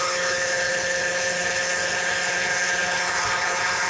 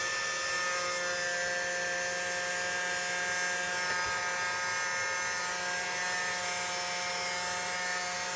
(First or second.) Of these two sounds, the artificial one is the first